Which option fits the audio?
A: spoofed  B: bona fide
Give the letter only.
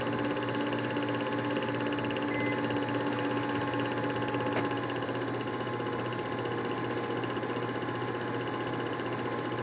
B